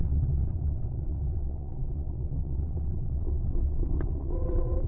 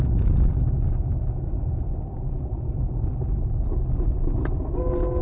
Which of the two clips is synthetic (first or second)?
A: first